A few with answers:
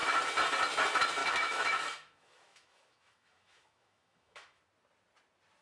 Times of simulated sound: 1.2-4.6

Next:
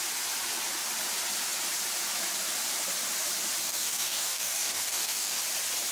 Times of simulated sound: 3.6-5.4

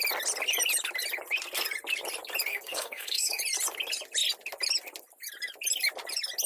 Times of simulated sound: 2.5-3.4

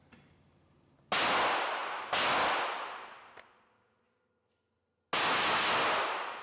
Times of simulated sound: none